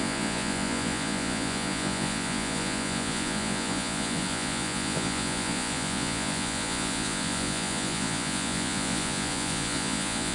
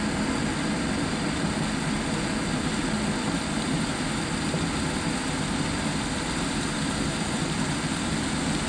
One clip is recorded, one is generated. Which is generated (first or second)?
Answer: first